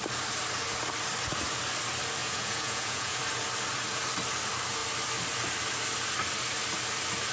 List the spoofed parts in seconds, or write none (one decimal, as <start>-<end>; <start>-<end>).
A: 2.2-3.2